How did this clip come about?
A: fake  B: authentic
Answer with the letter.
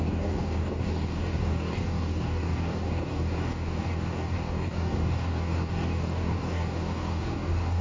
A